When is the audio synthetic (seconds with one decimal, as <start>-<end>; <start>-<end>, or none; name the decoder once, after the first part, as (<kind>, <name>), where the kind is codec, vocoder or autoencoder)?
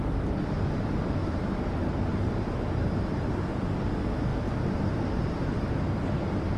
1.2-2.9 (vocoder, BigVGAN v2); 4.3-5.8